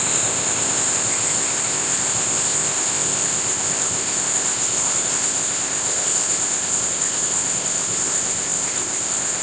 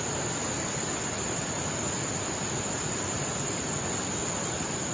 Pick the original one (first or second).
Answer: second